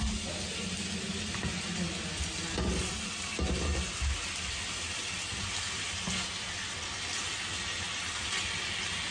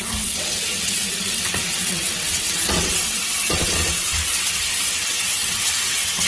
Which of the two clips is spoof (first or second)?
second